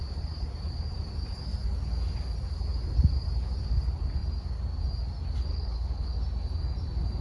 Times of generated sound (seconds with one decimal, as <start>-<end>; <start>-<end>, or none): 5.5-6.1